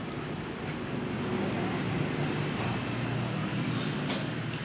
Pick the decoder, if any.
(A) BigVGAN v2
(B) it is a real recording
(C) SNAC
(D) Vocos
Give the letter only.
B